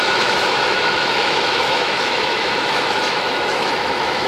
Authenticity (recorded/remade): remade